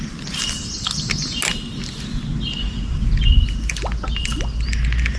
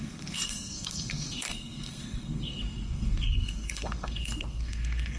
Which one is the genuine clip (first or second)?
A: first